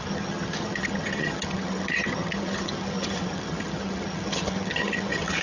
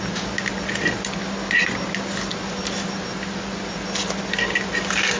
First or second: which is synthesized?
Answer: first